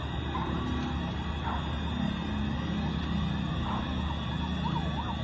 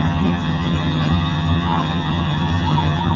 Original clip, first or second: first